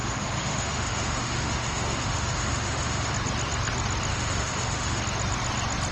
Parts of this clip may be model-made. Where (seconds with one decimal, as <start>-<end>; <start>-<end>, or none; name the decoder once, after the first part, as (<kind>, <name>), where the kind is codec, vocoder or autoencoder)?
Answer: 0.0-3.1 (autoencoder, DAC-VAE); 4.1-5.0